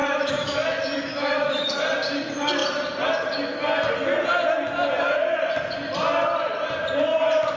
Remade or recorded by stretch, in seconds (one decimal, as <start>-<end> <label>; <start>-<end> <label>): 0.0-1.8 remade; 1.8-7.6 recorded